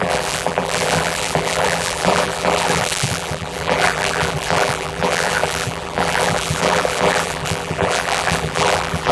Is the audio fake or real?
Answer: fake